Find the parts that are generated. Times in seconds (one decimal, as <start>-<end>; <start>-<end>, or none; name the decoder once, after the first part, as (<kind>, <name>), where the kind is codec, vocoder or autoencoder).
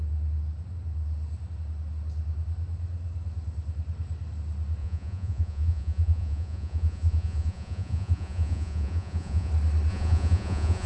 4.8-9.5 (vocoder, Vocos); 9.9-10.9